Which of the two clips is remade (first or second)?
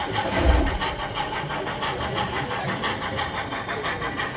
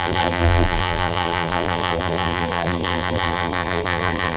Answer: second